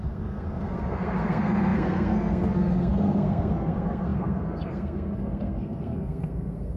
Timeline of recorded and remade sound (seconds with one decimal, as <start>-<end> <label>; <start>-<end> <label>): 0.0-6.8 remade

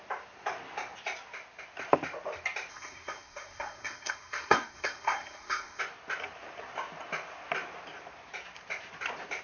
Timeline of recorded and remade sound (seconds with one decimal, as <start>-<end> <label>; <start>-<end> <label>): 0.0-2.7 recorded; 2.7-5.8 remade; 5.8-9.4 recorded

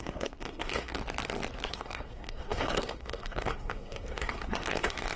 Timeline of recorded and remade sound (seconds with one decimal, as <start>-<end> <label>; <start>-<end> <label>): 0.0-1.0 remade; 1.0-1.7 recorded; 1.7-5.2 remade

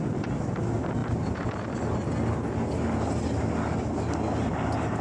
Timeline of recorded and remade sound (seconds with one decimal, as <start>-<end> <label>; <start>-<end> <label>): 0.0-5.0 recorded

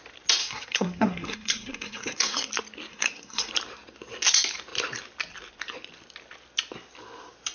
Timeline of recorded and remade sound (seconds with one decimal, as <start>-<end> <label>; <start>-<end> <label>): 0.0-0.4 recorded; 0.4-2.5 remade; 2.5-2.9 recorded; 2.9-3.5 remade; 3.5-7.5 recorded

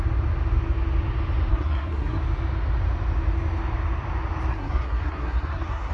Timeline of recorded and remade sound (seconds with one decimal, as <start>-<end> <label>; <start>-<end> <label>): 0.0-1.5 recorded; 1.5-2.2 remade; 2.2-4.5 recorded; 4.5-5.9 remade

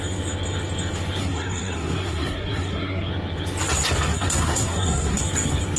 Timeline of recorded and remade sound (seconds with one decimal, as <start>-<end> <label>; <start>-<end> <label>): 0.0-1.2 recorded; 1.2-3.1 remade; 3.1-4.1 recorded; 4.1-5.2 remade; 5.2-5.8 recorded